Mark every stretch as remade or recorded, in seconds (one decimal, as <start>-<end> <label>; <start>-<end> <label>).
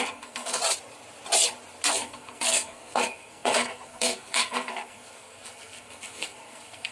0.0-0.6 remade; 0.6-1.9 recorded; 1.9-6.9 remade